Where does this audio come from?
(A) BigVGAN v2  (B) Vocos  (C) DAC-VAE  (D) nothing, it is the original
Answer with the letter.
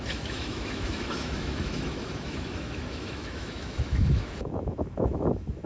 C